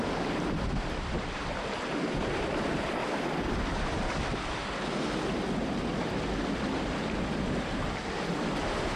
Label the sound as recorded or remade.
remade